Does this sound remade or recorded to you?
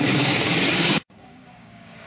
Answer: remade